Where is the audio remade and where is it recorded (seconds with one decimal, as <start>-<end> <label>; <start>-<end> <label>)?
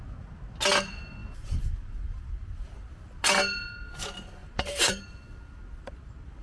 0.0-1.2 recorded; 1.2-2.3 remade; 2.3-4.4 recorded; 4.4-5.0 remade; 5.0-6.4 recorded